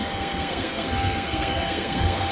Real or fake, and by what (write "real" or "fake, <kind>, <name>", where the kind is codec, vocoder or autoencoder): fake, codec, SNAC